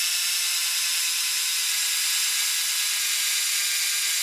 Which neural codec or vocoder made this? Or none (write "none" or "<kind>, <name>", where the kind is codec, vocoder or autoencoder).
none